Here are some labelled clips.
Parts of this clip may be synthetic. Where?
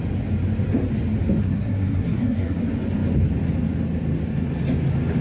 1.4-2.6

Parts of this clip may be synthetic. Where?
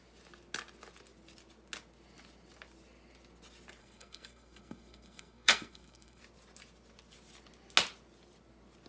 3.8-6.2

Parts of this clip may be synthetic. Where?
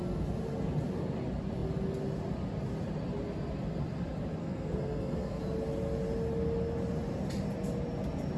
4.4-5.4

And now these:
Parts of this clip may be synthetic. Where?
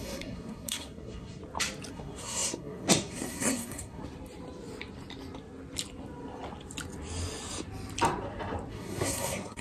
0.0-1.4; 1.9-4.0; 8.7-9.6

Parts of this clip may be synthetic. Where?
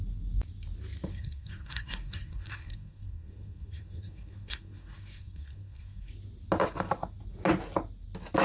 1.1-6.1